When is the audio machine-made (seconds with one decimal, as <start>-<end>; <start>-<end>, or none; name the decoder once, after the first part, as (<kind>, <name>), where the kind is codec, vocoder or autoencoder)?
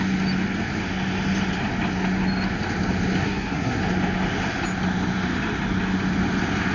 3.2-3.8 (codec, SNAC)